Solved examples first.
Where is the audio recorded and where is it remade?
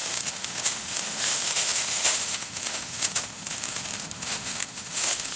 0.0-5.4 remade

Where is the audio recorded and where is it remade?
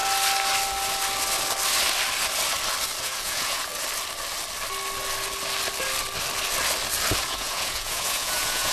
0.0-3.0 recorded; 3.0-3.7 remade; 3.7-7.2 recorded; 7.2-8.7 remade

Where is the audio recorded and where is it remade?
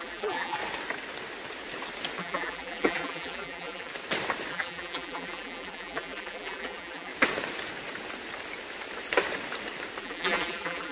0.0-0.6 remade; 0.6-2.2 recorded; 2.2-3.9 remade; 3.9-4.5 recorded; 4.5-7.1 remade; 7.1-10.0 recorded; 10.0-10.9 remade